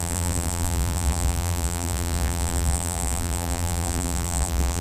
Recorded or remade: remade